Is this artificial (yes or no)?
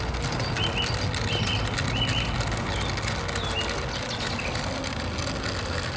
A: no